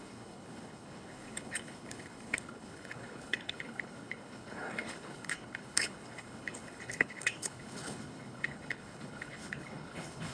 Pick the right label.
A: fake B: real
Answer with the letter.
A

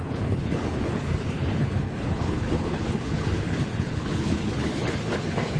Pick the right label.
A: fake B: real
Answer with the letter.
A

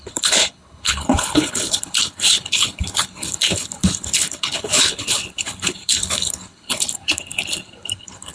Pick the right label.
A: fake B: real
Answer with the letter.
A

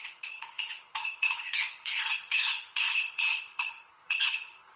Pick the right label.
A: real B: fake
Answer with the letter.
B